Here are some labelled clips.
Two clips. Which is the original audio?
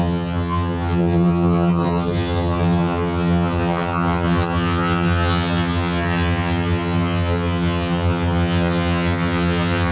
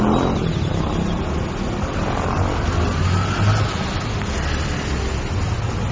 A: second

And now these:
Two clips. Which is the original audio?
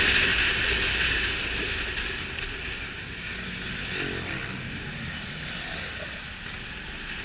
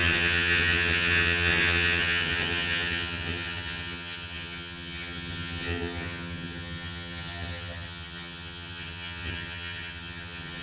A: first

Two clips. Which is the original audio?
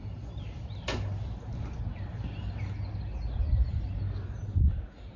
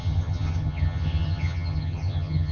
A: first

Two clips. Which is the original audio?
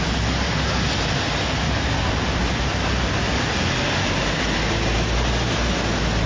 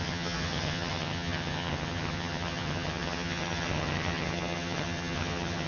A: first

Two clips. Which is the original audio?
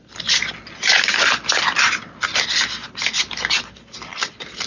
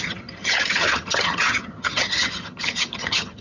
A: first